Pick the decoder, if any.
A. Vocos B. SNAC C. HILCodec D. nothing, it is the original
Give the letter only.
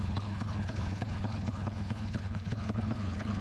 C